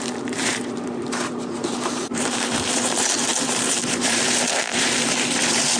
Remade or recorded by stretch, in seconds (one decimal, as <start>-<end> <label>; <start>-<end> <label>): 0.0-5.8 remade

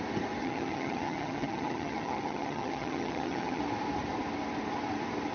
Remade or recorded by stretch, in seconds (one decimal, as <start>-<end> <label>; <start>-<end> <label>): 0.0-0.4 recorded; 0.4-3.6 remade; 3.6-5.3 recorded

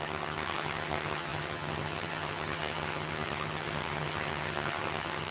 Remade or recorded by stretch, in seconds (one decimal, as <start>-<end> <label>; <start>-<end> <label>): 0.0-5.3 remade